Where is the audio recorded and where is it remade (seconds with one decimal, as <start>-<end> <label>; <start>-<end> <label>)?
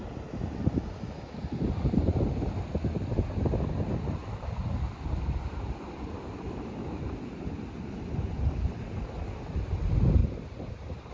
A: 0.0-10.2 recorded; 10.2-11.1 remade